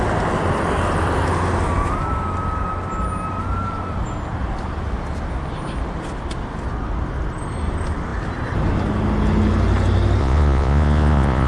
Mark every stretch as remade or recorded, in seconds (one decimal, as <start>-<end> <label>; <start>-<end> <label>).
0.0-10.2 recorded; 10.2-11.5 remade